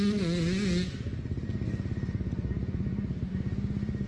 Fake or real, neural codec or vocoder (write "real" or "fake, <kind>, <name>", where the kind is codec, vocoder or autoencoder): real